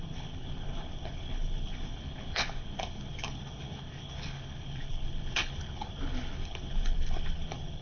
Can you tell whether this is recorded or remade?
remade